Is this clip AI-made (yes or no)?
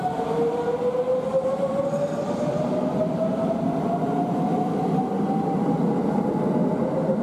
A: no